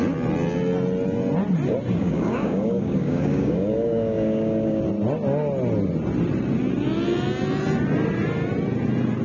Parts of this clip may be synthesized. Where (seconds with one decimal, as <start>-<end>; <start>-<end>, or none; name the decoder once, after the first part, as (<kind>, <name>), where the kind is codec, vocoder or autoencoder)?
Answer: 2.0-4.8 (codec, DAC)